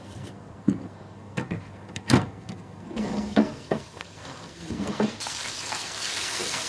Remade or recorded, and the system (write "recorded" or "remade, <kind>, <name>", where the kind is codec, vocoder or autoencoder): remade, codec, SNAC